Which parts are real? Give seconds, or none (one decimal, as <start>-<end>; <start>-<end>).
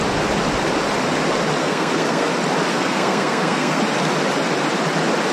0.0-1.6; 2.3-2.7; 3.8-5.3